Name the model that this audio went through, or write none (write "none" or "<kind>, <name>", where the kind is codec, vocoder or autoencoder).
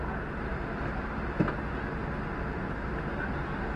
none